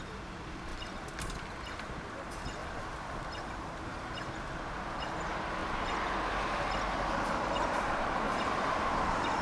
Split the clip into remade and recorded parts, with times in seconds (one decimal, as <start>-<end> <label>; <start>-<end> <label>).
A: 0.0-0.7 remade; 0.7-1.8 recorded; 1.8-2.6 remade; 2.6-3.4 recorded; 3.4-5.6 remade; 5.6-7.1 recorded; 7.1-9.4 remade